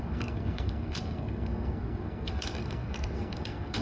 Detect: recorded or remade remade